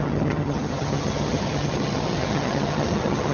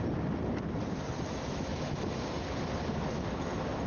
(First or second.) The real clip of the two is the second